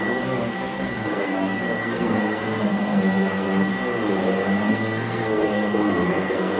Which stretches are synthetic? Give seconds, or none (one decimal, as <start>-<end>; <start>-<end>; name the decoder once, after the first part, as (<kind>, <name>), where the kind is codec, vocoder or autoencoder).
0.0-3.7 (codec, SNAC); 4.7-6.6